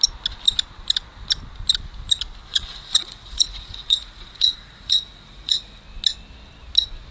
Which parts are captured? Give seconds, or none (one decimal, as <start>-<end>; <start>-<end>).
0.0-2.5; 5.8-7.1